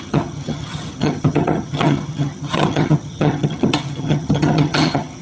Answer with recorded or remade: remade